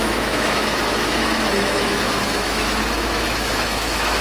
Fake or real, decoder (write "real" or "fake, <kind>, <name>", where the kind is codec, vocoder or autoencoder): fake, autoencoder, DAC-VAE